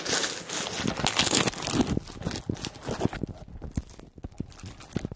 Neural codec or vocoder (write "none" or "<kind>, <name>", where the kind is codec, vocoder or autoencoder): none